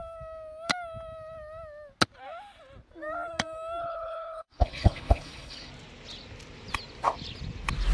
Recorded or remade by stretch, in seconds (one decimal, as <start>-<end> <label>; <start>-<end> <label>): 0.0-3.8 recorded; 3.8-5.7 remade; 5.7-7.9 recorded